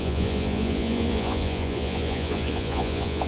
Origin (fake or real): fake